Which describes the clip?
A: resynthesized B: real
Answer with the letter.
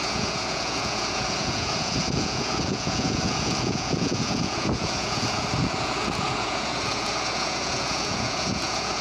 A